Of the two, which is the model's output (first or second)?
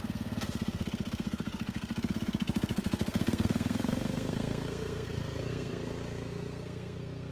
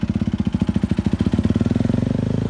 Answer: first